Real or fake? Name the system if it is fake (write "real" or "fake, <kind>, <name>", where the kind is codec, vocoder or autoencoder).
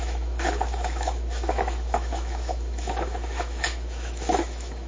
fake, autoencoder, DAC-VAE